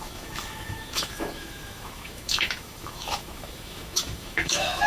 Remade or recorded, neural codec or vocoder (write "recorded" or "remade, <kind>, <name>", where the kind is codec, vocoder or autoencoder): remade, autoencoder, DAC-VAE